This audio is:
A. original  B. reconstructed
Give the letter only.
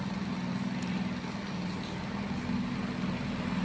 A